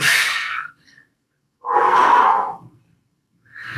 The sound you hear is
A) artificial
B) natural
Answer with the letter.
A